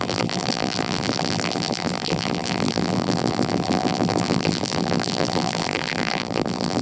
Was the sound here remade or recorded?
remade